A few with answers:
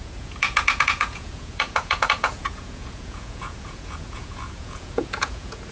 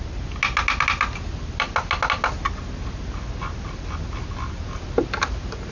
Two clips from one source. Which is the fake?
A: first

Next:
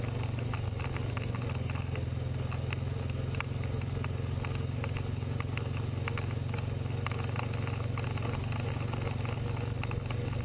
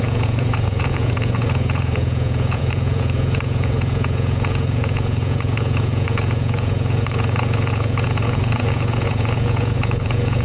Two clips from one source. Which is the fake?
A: second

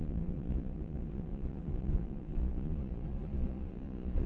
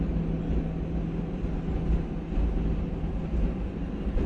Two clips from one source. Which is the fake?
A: first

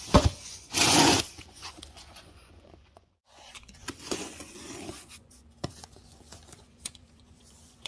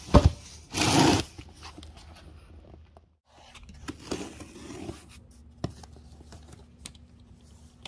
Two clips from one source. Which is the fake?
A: first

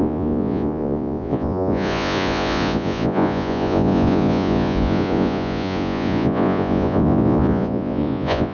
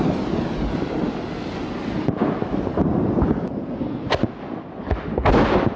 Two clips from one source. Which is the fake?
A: first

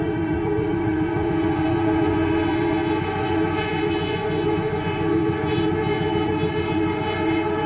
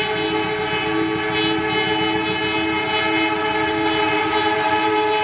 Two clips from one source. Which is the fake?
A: first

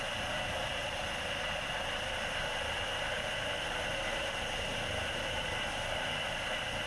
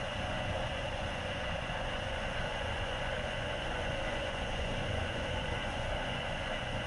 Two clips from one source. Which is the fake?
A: second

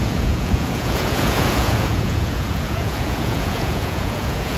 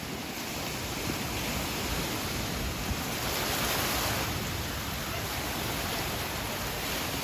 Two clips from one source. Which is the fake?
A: first